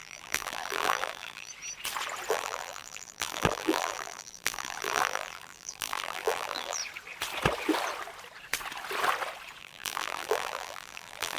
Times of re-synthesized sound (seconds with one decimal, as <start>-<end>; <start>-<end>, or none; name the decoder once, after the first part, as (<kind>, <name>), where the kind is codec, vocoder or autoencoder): 0.0-1.5 (vocoder, BigVGAN v2); 2.3-6.8; 9.6-11.4